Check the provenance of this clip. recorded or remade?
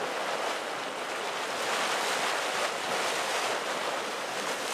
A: recorded